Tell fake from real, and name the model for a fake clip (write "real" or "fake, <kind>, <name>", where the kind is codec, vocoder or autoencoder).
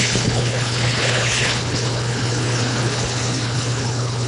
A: fake, codec, HILCodec